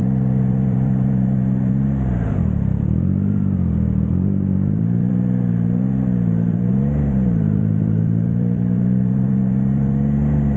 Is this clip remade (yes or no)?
yes